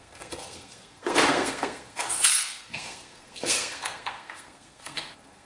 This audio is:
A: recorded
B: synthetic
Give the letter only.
B